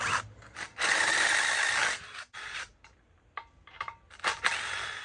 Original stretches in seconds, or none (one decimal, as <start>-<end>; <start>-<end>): 0.0-0.7; 1.3-5.0